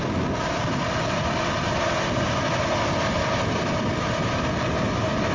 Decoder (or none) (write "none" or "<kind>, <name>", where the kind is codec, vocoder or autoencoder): none